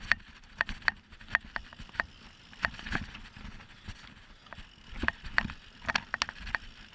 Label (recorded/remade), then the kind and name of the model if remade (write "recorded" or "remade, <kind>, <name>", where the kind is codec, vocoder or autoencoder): recorded